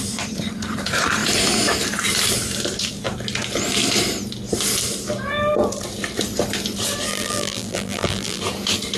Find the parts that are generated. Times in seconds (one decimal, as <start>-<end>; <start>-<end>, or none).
7.1-8.4